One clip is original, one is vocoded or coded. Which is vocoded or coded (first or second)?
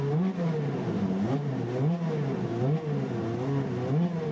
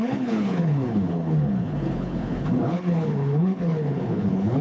second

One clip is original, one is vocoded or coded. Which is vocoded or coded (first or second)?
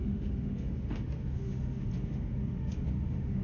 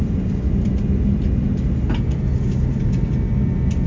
first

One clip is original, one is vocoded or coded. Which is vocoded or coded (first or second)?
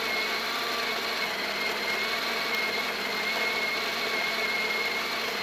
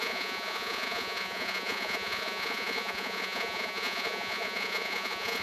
second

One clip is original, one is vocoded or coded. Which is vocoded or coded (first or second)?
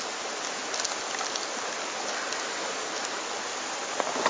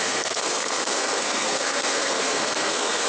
second